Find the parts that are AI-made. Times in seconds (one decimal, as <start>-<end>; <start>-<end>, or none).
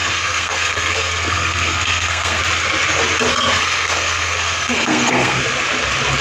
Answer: 0.0-2.4; 3.3-5.4